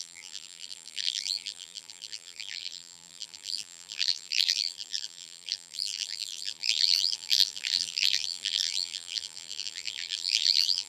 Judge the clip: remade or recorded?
remade